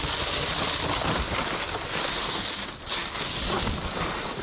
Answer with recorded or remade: recorded